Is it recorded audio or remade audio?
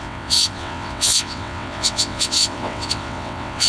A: remade